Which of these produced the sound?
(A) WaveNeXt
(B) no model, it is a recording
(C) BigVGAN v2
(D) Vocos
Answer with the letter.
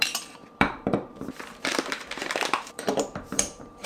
C